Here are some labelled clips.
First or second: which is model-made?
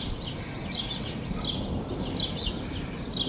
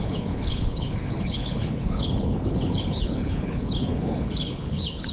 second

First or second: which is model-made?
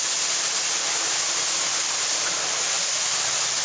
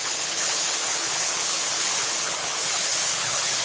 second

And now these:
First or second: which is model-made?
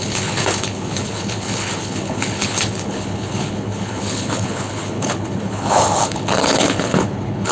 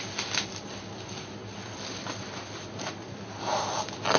first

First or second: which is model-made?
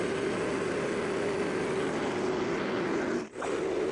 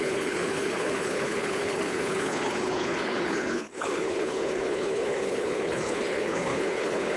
second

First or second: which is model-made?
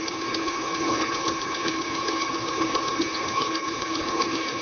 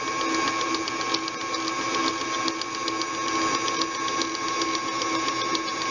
first